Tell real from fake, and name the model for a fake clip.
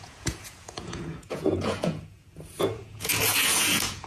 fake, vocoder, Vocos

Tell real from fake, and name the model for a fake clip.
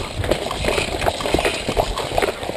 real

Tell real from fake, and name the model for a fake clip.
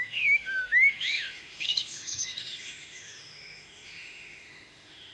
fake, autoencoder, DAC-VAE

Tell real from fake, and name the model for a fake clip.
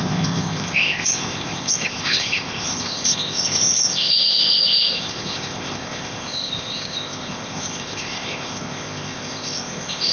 fake, codec, ZipCodec